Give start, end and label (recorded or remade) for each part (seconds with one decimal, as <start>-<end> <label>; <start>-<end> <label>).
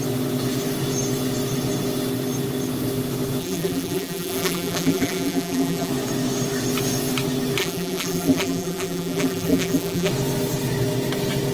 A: 0.0-3.4 recorded; 3.4-5.9 remade; 5.9-7.6 recorded; 7.6-10.1 remade; 10.1-11.5 recorded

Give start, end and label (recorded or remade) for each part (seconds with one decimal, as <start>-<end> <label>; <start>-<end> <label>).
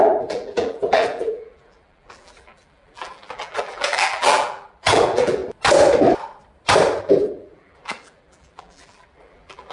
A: 0.0-5.4 remade; 5.4-7.0 recorded; 7.0-9.7 remade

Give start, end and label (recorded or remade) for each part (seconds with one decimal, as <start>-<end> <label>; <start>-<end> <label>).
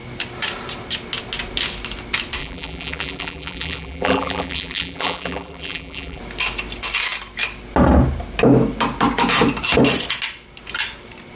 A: 0.0-2.4 recorded; 2.4-6.2 remade; 6.2-11.4 recorded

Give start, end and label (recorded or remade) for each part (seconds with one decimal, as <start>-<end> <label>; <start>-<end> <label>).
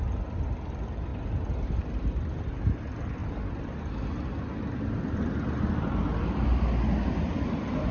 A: 0.0-1.1 remade; 1.1-2.4 recorded; 2.4-3.2 remade; 3.2-5.7 recorded; 5.7-7.9 remade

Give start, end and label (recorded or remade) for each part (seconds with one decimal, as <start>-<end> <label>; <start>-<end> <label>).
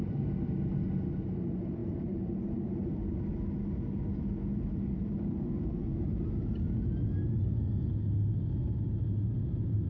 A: 0.0-1.8 recorded; 1.8-3.2 remade; 3.2-4.5 recorded; 4.5-5.5 remade; 5.5-9.9 recorded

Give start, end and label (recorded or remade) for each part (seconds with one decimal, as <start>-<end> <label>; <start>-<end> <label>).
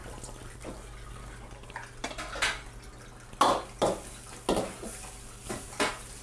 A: 0.0-6.2 recorded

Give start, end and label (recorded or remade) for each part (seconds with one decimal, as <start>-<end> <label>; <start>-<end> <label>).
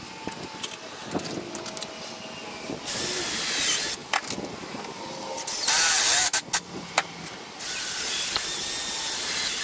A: 0.0-9.6 recorded